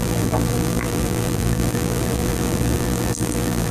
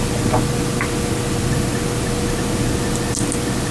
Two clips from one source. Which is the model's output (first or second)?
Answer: first